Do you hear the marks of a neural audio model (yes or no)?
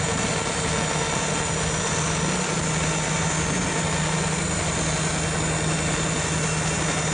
no